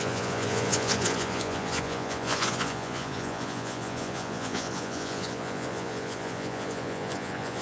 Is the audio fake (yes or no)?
yes